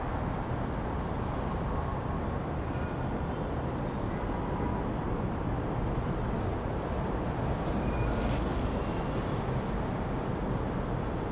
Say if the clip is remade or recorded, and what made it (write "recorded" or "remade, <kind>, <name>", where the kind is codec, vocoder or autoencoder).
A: recorded